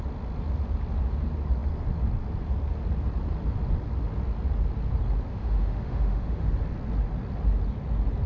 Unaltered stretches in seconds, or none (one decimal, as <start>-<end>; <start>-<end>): 0.0-5.3; 6.5-8.3